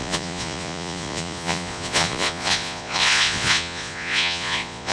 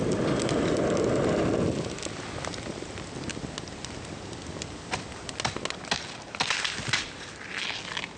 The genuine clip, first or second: second